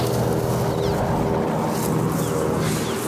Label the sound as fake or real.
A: real